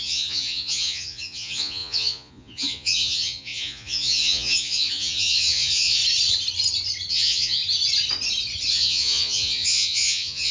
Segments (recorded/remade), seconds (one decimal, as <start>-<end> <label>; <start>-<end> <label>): 0.0-6.0 remade; 6.0-7.1 recorded; 7.1-7.6 remade; 7.6-8.7 recorded; 8.7-10.5 remade